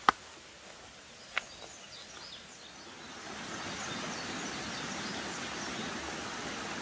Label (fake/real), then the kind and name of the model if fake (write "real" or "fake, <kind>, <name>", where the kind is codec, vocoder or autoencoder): real